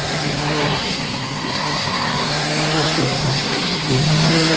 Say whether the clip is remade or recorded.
remade